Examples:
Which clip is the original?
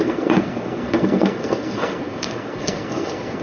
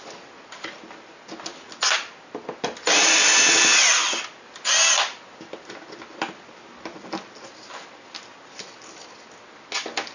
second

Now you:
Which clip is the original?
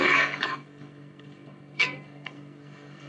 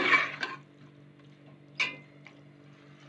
second